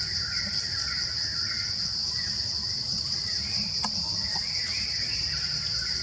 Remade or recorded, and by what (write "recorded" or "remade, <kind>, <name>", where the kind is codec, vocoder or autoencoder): recorded